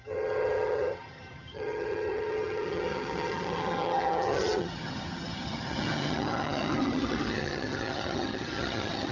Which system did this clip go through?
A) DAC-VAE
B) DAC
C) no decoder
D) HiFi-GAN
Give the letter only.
D